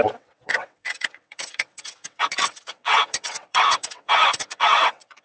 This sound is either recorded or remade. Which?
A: remade